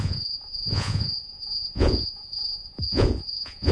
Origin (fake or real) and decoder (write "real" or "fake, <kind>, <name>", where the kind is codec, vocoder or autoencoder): fake, vocoder, Vocos